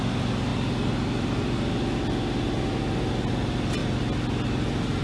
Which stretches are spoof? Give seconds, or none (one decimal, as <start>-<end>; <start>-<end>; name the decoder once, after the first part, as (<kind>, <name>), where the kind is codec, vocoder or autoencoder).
none